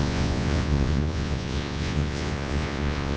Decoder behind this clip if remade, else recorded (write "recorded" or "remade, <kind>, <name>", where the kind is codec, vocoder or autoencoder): remade, vocoder, Vocos